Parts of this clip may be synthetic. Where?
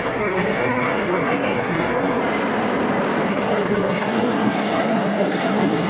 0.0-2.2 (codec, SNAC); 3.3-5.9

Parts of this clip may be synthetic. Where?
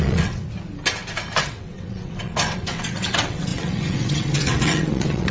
0.0-0.4 (vocoder, WaveNeXt); 1.4-5.3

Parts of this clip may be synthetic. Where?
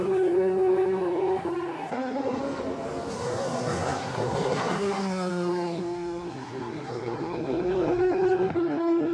0.0-2.4 (codec, SNAC); 3.1-9.1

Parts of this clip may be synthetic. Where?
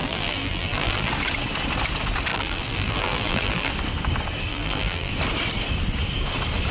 0.0-1.1 (vocoder, BigVGAN v2); 2.3-3.7; 4.5-5.1